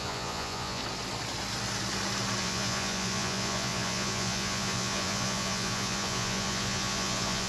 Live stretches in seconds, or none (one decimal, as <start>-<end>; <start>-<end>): 0.8-2.4